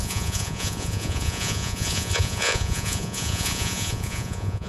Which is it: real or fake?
fake